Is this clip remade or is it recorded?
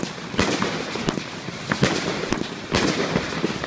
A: recorded